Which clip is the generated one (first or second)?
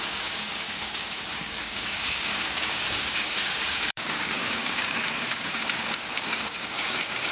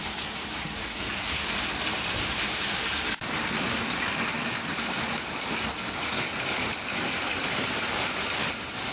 first